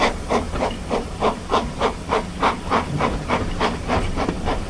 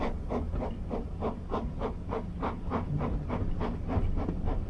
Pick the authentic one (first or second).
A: second